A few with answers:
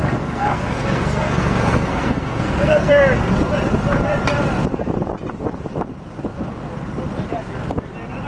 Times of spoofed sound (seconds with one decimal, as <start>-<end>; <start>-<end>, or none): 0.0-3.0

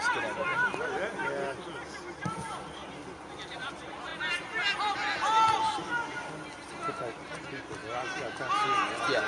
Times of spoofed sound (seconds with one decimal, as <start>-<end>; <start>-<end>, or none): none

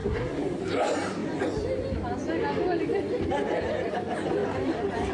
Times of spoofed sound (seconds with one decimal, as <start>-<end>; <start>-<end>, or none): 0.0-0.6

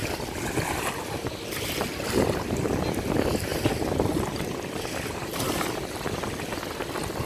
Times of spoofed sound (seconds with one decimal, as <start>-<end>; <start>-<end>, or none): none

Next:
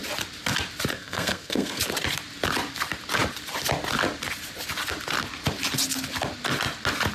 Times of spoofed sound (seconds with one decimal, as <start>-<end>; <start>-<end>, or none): 0.9-1.8

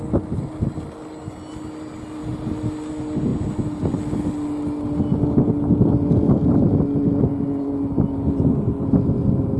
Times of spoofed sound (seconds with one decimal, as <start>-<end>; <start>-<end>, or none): none